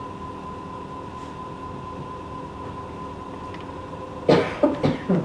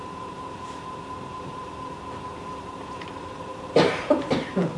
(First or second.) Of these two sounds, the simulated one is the second